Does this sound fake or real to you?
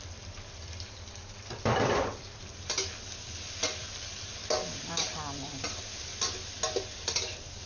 fake